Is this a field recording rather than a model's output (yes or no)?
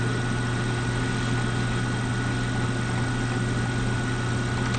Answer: yes